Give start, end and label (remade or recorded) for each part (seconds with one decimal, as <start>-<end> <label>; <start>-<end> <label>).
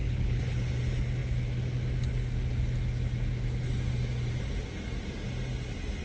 0.0-0.7 remade; 0.7-6.0 recorded